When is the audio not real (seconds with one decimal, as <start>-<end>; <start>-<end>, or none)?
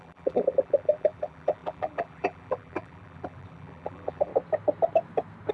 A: 0.0-4.3